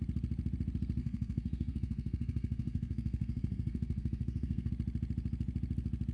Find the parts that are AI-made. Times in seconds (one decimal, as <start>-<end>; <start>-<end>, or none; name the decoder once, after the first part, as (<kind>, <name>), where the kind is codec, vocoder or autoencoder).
1.0-4.7 (codec, SNAC)